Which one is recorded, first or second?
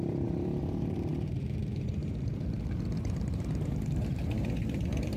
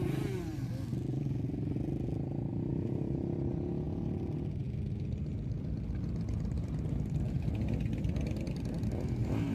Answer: second